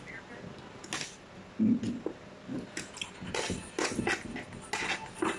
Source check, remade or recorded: recorded